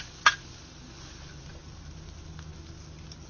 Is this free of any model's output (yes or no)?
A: yes